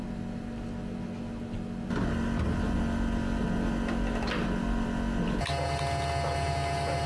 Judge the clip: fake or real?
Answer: real